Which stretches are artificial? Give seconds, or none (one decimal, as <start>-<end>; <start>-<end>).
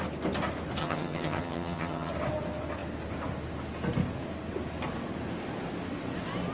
0.8-2.1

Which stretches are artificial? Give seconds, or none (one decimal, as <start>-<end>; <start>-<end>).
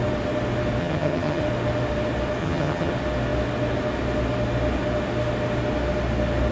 0.8-1.4; 2.4-2.9